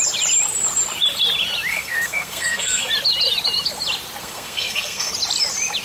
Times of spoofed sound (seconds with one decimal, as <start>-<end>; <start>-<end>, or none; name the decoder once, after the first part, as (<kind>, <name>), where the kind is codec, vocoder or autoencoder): 1.7-2.9 (codec, SNAC); 4.2-5.1